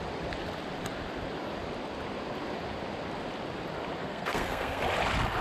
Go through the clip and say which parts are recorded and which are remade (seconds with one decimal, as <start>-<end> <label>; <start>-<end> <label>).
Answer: 0.0-4.0 recorded; 4.0-4.8 remade; 4.8-5.4 recorded

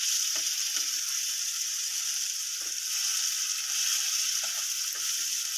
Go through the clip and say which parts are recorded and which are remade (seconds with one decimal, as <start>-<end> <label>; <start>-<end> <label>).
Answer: 0.0-1.9 recorded; 1.9-3.0 remade; 3.0-5.6 recorded

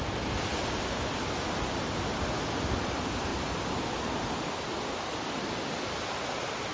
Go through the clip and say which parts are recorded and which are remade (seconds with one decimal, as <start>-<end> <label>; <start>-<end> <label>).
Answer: 0.0-6.7 recorded

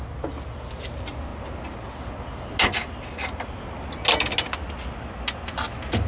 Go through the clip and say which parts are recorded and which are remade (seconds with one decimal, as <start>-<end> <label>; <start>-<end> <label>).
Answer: 0.0-6.1 recorded

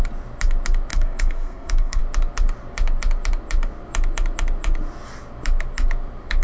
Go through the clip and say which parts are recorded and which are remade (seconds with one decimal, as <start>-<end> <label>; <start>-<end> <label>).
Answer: 0.0-0.9 recorded; 0.9-2.0 remade; 2.0-6.4 recorded